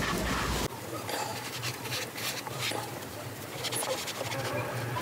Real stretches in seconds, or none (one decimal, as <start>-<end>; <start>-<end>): 0.0-5.0